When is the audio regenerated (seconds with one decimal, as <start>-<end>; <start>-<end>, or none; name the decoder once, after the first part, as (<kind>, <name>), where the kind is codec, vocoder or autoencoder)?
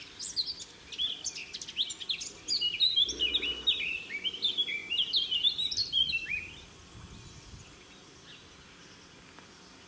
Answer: none